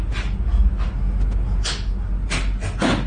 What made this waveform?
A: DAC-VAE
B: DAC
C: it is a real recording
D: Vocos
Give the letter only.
C